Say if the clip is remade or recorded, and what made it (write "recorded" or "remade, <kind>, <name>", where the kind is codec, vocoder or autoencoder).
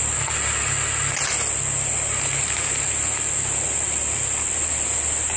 recorded